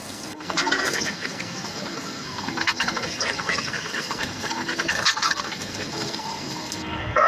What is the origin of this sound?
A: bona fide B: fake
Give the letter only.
B